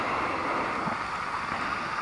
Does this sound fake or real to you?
real